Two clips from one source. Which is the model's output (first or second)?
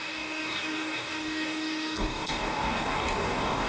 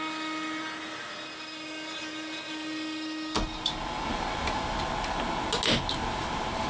first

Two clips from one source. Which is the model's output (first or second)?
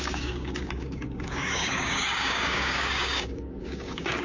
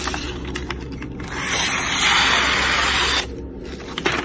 first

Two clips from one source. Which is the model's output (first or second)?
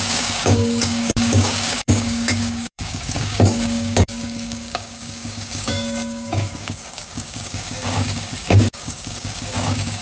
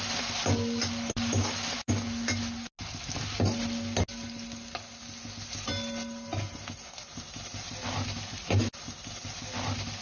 first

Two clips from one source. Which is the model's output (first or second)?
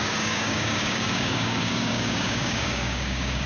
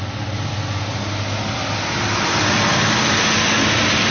first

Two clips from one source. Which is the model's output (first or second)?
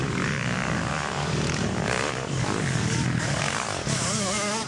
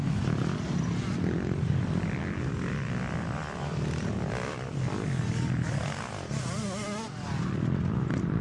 first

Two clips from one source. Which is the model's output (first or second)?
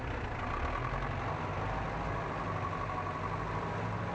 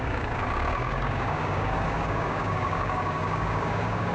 second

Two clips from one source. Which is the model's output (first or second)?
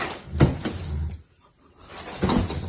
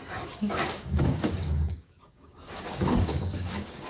second